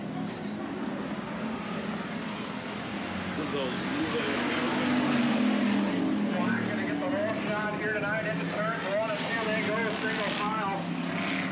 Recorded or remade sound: recorded